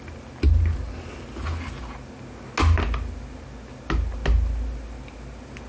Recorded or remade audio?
recorded